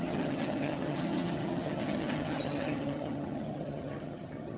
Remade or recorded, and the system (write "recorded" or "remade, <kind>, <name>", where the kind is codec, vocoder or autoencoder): remade, vocoder, HiFi-GAN